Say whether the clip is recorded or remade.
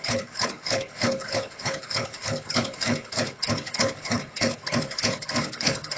remade